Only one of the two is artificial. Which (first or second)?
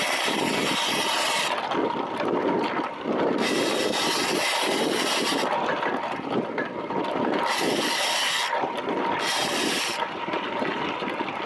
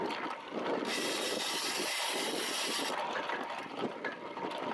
second